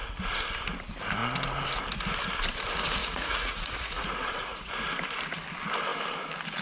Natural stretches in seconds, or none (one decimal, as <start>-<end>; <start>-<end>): 0.0-3.0; 4.7-6.6